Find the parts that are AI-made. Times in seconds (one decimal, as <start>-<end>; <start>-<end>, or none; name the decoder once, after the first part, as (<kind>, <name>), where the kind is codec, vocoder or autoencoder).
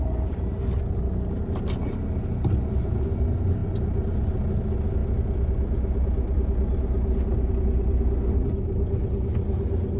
none